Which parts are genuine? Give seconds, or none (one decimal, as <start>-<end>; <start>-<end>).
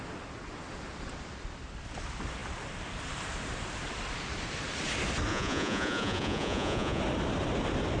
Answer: 0.0-5.3; 7.0-8.0